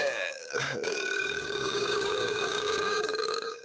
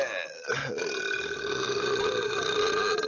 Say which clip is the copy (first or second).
first